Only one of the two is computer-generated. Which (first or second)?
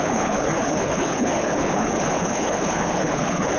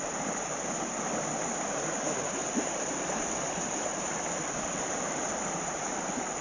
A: first